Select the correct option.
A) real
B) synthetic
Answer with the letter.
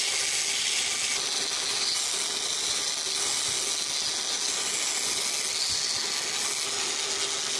A